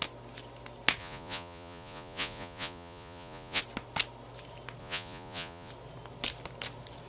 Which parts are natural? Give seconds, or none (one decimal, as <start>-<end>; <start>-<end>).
0.0-1.0; 3.6-4.8; 5.7-7.1